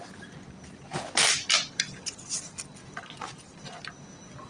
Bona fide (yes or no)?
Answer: yes